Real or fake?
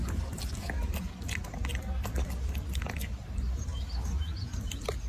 real